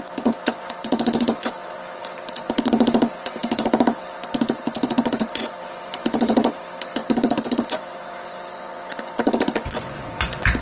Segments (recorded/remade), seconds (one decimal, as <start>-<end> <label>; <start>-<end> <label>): 0.0-10.6 remade